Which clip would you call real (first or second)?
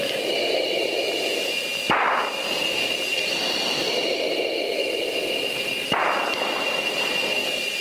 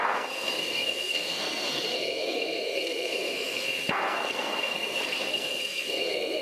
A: first